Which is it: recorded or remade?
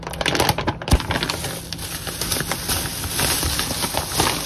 recorded